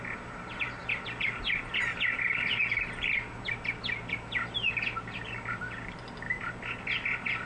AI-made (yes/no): no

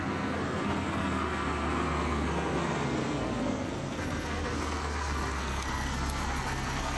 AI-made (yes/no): yes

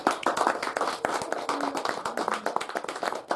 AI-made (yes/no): no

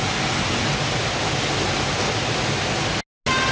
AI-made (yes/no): no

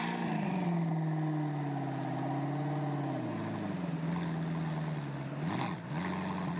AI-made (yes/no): no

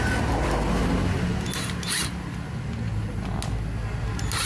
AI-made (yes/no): no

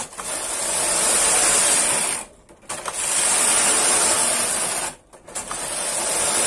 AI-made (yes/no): no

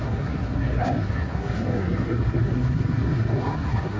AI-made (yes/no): yes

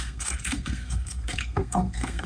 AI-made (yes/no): yes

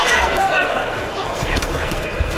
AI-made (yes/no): yes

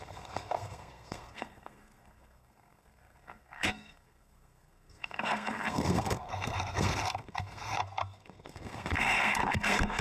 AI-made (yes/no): yes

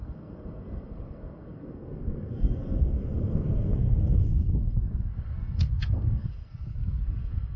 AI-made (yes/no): yes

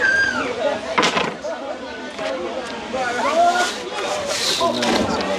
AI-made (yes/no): no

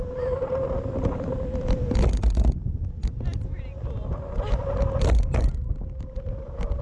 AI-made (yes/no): no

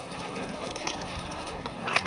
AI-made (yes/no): yes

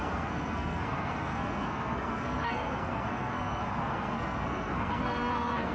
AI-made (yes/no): yes